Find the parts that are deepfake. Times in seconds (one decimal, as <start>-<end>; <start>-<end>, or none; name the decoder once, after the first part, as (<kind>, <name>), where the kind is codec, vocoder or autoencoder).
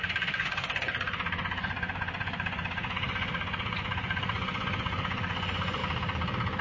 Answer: 0.0-5.8 (vocoder, Vocos)